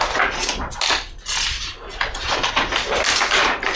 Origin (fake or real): real